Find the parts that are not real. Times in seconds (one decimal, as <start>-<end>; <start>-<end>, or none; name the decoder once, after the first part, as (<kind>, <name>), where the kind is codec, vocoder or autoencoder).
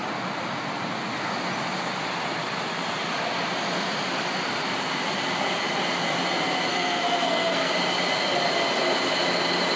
6.7-7.7 (codec, SNAC)